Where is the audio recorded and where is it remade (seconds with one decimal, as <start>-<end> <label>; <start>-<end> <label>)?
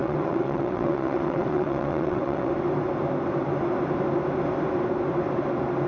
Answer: 0.0-2.5 remade; 2.5-5.9 recorded